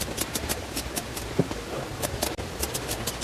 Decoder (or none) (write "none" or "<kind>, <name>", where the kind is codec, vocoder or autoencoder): none